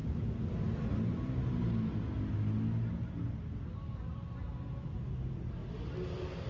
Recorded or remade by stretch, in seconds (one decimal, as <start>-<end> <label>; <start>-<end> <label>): 0.0-6.5 recorded